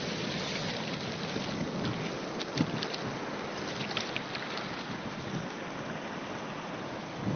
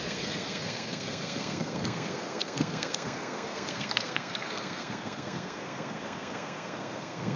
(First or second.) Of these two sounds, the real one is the first